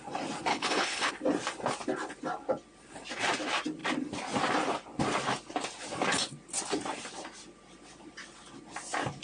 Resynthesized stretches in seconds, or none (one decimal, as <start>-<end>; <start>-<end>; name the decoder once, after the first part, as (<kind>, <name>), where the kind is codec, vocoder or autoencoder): 0.5-1.1 (codec, HILCodec)

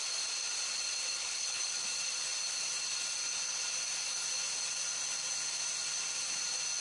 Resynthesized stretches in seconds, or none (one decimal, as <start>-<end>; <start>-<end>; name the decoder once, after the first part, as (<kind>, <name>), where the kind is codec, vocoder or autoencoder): 1.2-1.7 (codec, HILCodec)

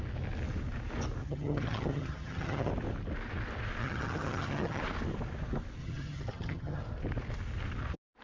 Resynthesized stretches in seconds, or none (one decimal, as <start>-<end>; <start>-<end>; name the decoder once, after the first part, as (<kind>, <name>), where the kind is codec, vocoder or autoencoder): 1.2-2.7 (vocoder, HiFi-GAN); 3.8-4.8; 5.8-6.8

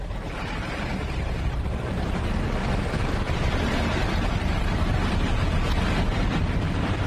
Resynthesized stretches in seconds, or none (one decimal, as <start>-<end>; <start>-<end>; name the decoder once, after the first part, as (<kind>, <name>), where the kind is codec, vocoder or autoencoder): none

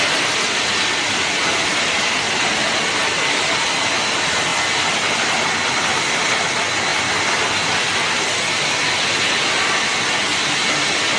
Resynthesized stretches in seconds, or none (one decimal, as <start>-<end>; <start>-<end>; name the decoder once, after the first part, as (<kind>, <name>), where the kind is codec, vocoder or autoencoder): 1.7-2.5 (vocoder, BigVGAN v2)

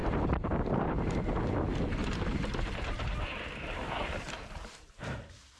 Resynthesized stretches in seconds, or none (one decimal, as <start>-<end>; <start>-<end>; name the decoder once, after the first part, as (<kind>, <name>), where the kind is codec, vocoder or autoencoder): 0.0-1.2 (vocoder, BigVGAN v2); 2.0-4.9